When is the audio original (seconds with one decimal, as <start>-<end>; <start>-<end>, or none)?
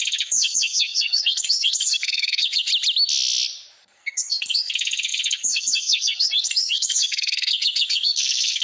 2.7-3.8